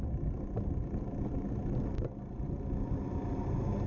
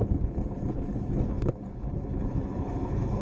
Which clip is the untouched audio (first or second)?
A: first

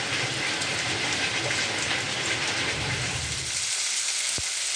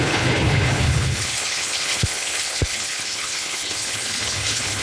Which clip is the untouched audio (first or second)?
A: first